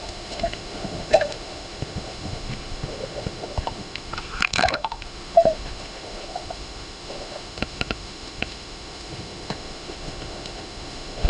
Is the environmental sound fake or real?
fake